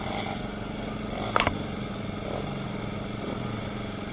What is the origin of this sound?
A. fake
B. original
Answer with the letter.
B